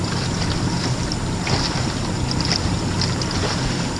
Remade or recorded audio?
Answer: recorded